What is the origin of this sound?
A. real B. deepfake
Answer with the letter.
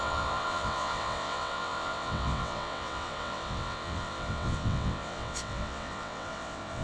B